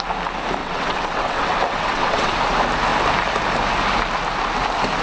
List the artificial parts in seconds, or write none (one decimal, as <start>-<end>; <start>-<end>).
0.6-2.3